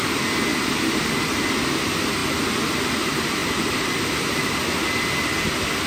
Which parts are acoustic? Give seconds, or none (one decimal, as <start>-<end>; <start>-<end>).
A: 0.0-0.5; 1.0-3.4; 4.8-5.9